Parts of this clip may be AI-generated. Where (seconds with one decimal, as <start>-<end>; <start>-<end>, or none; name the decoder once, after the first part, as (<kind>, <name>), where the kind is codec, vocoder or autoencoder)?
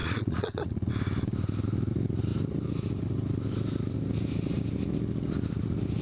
0.0-0.9 (vocoder, Vocos)